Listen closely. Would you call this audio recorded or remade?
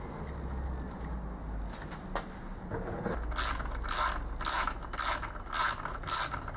recorded